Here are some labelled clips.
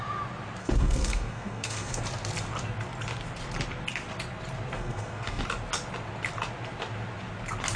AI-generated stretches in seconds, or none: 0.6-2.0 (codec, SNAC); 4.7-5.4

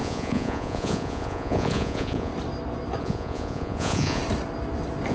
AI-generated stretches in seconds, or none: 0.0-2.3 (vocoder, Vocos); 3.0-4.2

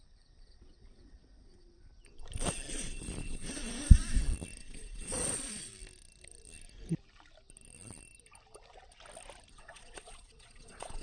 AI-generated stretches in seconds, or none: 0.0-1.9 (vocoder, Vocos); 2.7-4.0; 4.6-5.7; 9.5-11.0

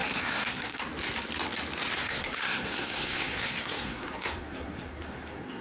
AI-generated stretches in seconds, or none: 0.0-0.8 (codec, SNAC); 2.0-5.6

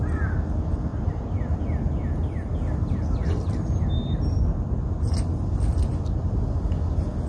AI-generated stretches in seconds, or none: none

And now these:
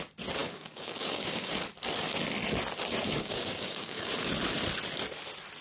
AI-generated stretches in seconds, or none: 0.4-1.5 (codec, DAC); 3.0-4.1

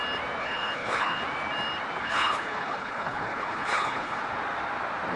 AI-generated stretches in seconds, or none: 0.4-1.2 (codec, HILCodec); 2.0-4.2

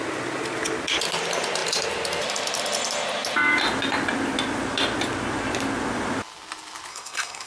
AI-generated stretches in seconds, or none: 6.9-7.5 (codec, SNAC)